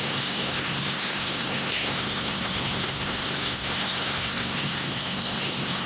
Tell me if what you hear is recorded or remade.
remade